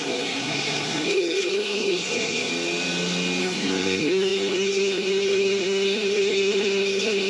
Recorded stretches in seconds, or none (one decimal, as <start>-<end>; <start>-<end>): 2.5-3.4

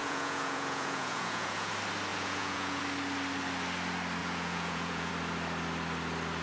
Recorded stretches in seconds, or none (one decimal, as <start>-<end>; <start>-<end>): 1.7-2.1; 2.8-4.2; 5.1-6.4

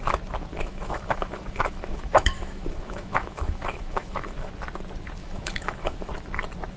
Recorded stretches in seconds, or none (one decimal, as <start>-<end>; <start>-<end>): 0.0-0.5; 4.5-5.2; 6.1-6.8

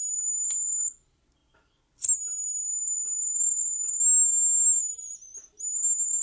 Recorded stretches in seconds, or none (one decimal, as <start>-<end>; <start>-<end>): 0.0-6.2

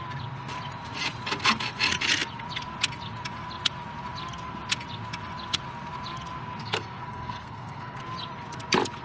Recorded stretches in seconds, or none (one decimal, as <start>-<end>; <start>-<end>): 0.0-6.6; 8.0-9.0

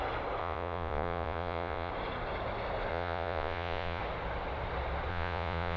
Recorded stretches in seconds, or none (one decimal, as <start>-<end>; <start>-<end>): 0.0-0.4; 1.9-2.9; 4.0-5.1

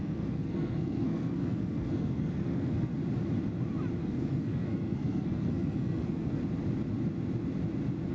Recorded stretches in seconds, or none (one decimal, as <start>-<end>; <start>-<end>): 2.9-4.0; 6.4-8.1

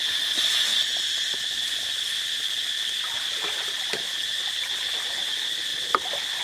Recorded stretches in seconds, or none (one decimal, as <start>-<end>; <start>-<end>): 0.0-5.7